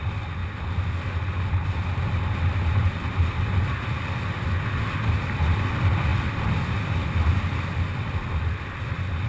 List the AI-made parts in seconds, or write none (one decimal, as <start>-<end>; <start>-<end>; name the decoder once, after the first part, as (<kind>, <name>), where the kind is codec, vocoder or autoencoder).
0.0-0.4 (vocoder, BigVGAN v2); 2.0-9.3